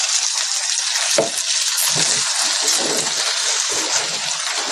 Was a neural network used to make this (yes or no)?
no